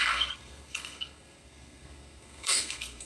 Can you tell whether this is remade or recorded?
remade